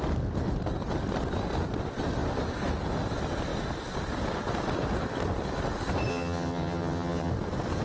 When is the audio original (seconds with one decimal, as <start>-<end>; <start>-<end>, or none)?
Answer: 0.0-6.1; 7.3-7.8